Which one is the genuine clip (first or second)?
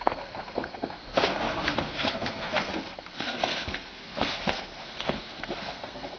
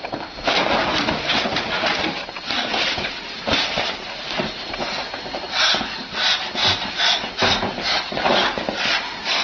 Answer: second